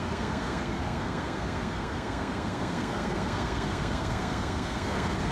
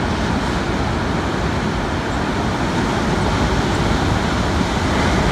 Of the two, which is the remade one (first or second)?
first